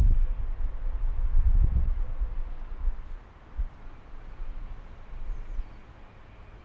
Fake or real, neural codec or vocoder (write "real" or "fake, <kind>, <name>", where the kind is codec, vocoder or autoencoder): real